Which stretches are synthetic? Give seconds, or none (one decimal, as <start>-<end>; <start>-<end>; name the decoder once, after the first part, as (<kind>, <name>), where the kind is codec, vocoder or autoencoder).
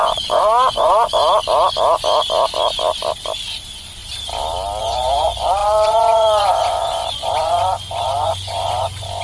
0.0-1.2 (vocoder, Vocos); 3.5-4.0; 4.8-9.2